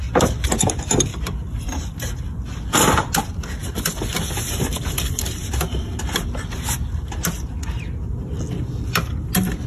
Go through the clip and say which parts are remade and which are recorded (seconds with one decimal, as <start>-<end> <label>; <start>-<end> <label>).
0.0-1.1 recorded; 1.1-2.2 remade; 2.2-3.6 recorded; 3.6-6.2 remade; 6.2-9.7 recorded